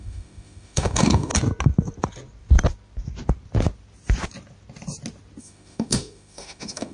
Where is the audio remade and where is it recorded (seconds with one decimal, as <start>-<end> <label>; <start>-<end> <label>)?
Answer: 0.0-1.3 remade; 1.3-5.4 recorded; 5.4-6.9 remade